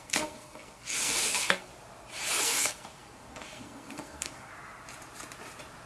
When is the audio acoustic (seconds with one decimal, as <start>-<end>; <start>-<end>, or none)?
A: 1.7-2.4; 4.5-5.9